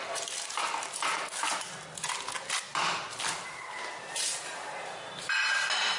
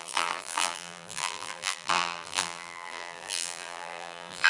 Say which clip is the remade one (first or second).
second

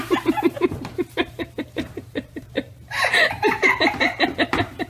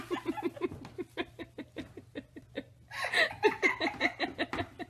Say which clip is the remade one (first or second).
first